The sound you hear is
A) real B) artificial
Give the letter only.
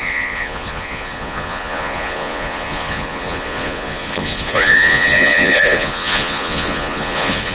B